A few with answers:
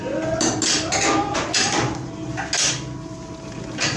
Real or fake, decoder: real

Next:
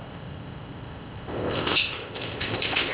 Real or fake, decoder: fake, codec, ZipCodec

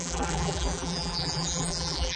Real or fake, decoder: fake, vocoder, BigVGAN v2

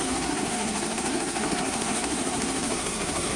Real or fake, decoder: fake, codec, SNAC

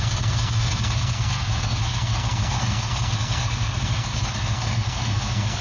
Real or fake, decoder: fake, codec, SNAC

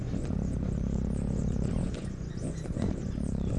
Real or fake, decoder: fake, vocoder, Vocos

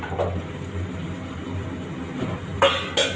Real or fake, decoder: real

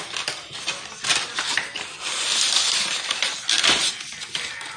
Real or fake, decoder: real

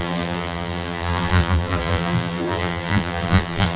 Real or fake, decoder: fake, vocoder, BigVGAN v2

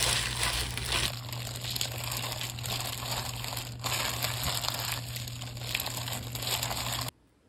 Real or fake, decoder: real